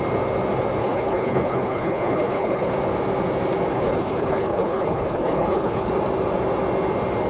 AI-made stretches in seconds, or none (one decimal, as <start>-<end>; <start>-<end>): 0.8-2.7; 3.7-5.9